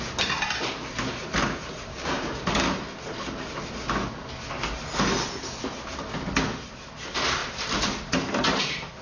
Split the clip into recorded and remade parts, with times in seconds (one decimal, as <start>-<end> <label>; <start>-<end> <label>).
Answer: 0.0-1.9 recorded; 1.9-2.5 remade; 2.5-9.0 recorded